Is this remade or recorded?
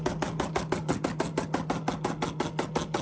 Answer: recorded